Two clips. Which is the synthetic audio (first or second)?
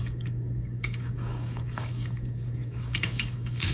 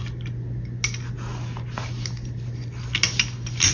first